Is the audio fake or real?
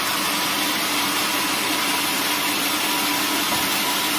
real